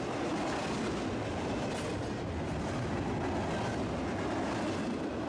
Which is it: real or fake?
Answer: real